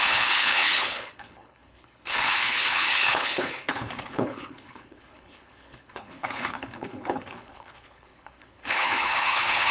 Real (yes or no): no